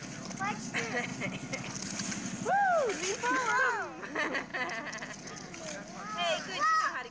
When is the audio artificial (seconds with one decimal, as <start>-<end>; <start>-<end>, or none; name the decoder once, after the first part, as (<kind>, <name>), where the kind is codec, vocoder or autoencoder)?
none